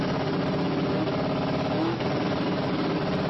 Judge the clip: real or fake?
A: real